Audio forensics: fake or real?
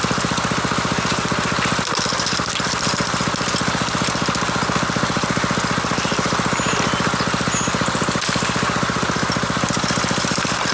real